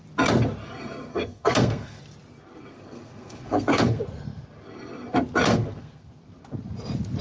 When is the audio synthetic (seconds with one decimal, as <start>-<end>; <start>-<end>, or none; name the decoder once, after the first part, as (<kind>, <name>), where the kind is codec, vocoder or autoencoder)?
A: 1.1-2.0 (codec, SNAC); 2.7-4.0; 5.5-6.1